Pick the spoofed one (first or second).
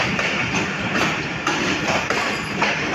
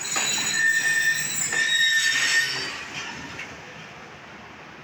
first